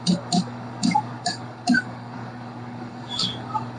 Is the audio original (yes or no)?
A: no